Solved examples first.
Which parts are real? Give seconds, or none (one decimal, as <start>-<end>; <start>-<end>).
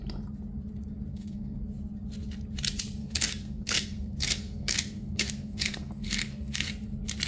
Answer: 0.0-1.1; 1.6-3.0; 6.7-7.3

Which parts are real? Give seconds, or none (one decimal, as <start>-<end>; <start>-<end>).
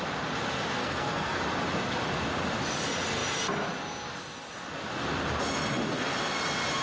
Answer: 0.0-0.8; 1.4-6.8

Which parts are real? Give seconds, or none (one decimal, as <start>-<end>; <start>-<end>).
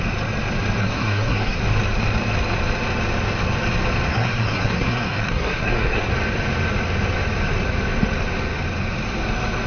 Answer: 0.0-0.8; 1.6-4.1; 6.1-9.7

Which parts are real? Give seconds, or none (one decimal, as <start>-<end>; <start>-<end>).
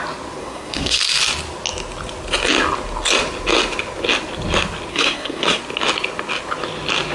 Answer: 0.0-0.4; 1.0-4.9; 5.6-7.1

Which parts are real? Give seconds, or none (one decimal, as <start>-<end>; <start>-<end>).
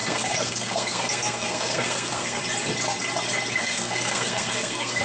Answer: 2.4-3.6